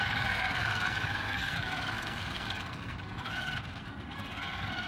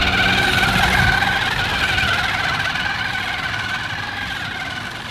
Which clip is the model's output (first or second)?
first